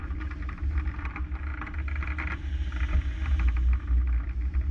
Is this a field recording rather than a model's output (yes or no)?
yes